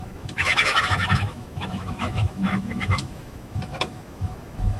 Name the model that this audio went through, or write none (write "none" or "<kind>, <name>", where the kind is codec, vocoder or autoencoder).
autoencoder, DAC-VAE